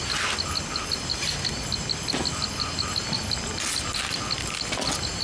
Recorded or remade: recorded